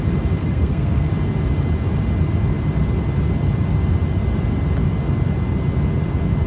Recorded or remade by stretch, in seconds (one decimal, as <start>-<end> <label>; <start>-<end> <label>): 0.0-0.4 recorded; 0.4-1.1 remade; 1.1-6.5 recorded